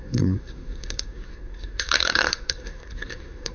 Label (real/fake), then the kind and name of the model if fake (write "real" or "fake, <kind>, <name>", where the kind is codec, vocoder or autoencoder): fake, codec, SNAC